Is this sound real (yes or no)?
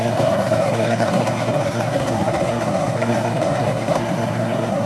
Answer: no